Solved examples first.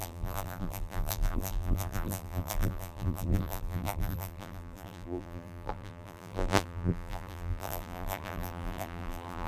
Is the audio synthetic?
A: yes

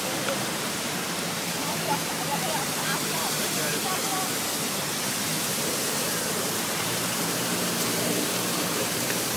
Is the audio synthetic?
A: yes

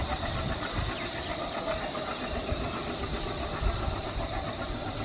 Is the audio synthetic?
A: yes